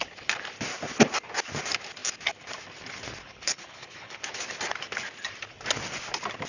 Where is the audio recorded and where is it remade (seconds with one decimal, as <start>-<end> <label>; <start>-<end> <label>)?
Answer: 0.0-3.2 recorded; 3.2-4.2 remade; 4.2-6.5 recorded